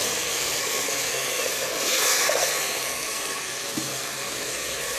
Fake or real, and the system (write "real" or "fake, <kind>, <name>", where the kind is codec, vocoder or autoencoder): fake, codec, SNAC